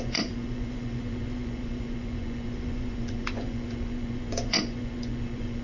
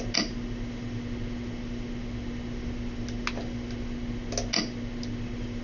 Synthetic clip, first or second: first